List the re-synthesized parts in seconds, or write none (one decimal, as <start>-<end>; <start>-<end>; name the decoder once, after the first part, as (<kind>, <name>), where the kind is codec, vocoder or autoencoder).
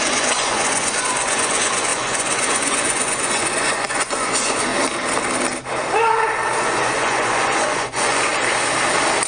0.0-4.7 (vocoder, Vocos); 6.6-8.3